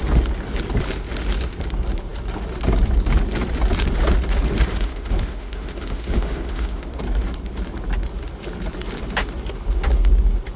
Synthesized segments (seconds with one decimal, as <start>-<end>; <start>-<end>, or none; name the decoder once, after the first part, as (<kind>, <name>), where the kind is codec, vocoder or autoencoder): 4.7-7.0 (autoencoder, DAC-VAE)